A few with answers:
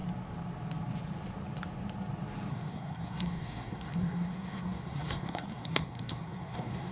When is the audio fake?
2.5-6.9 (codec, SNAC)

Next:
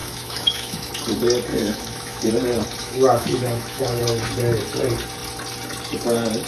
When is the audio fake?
0.0-0.9 (autoencoder, DAC-VAE); 1.5-2.3; 2.8-4.0

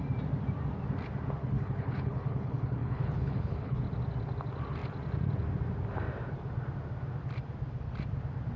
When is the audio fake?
1.4-3.8 (codec, HILCodec)

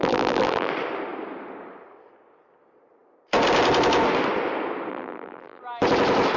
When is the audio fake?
0.0-0.7 (vocoder, BigVGAN v2); 4.9-5.6